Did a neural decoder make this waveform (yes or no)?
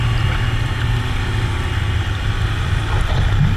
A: no